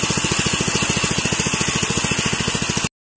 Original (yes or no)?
yes